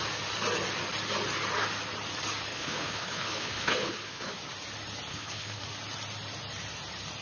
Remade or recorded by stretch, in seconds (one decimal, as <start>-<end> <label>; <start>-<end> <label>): 0.0-2.5 recorded; 2.5-4.3 remade; 4.3-5.1 recorded; 5.1-5.6 remade; 5.6-7.2 recorded